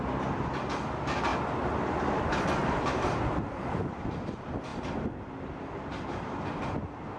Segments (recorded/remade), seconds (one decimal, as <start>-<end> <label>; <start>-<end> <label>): 0.0-2.6 recorded; 2.6-3.1 remade; 3.1-7.2 recorded